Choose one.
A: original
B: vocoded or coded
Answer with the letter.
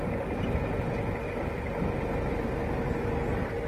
A